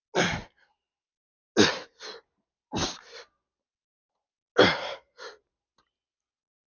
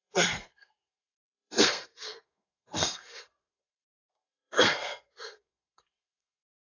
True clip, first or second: first